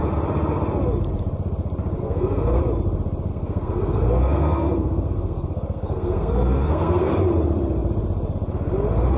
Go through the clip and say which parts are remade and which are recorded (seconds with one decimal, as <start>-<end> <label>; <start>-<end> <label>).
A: 0.0-2.0 recorded; 2.0-2.6 remade; 2.6-3.3 recorded; 3.3-7.1 remade; 7.1-9.2 recorded